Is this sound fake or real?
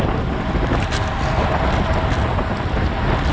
real